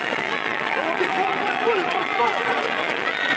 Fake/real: fake